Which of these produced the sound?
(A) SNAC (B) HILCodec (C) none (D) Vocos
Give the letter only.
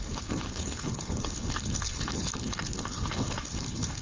B